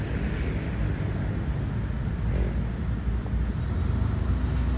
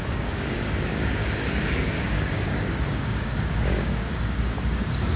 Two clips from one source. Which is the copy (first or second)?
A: second